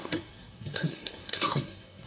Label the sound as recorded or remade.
remade